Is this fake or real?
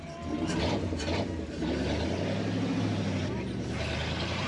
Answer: real